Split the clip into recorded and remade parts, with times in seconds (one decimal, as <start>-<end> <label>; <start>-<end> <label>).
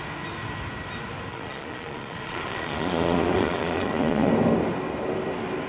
0.0-1.3 recorded; 1.3-4.3 remade; 4.3-5.7 recorded